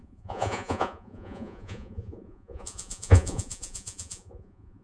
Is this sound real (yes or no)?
no